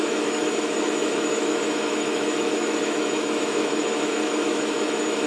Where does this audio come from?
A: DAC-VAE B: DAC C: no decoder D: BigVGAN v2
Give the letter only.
A